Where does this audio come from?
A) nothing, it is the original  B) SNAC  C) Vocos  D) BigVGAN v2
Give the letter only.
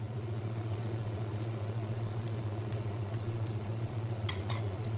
C